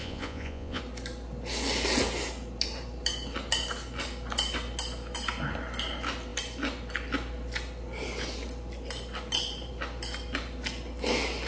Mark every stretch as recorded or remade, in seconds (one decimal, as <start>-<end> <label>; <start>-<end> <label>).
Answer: 0.0-0.8 remade; 0.8-11.5 recorded